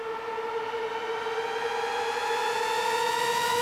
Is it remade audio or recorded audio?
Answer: recorded